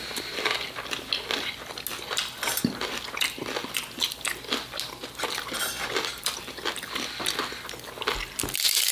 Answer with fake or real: real